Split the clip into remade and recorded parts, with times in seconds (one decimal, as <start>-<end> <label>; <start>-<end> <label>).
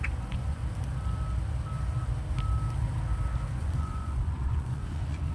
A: 0.0-0.6 remade; 0.6-3.5 recorded; 3.5-5.3 remade